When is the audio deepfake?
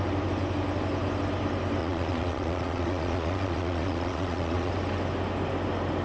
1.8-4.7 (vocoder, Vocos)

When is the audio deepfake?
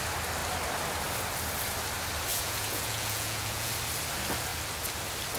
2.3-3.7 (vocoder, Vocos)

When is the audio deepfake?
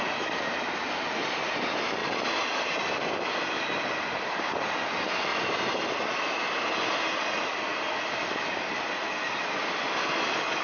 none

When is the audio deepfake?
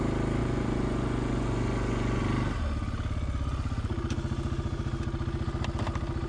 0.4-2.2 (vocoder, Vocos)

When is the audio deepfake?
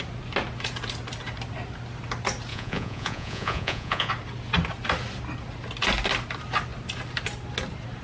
2.5-4.1 (vocoder, Vocos)